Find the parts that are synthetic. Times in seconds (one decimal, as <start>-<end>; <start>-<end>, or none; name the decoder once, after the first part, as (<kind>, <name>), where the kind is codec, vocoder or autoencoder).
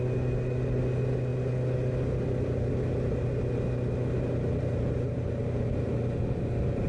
none